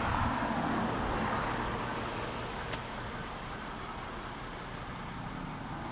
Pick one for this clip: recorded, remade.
recorded